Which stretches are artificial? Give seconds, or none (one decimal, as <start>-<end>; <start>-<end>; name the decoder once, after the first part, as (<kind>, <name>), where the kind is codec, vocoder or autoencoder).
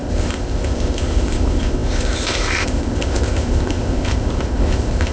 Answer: 0.0-5.1 (codec, ZipCodec)